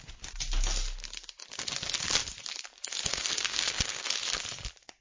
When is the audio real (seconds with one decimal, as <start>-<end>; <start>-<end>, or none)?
0.0-3.1; 4.1-5.0